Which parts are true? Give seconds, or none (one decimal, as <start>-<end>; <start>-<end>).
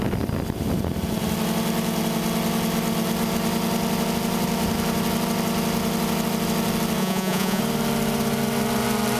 0.0-7.0; 7.6-9.2